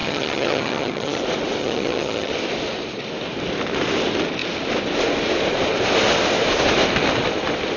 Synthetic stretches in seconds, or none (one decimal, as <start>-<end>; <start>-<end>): 0.0-1.2; 1.6-2.3